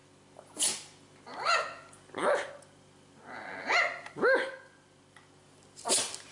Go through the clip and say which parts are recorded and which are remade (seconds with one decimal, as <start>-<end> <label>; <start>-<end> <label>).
0.0-6.3 recorded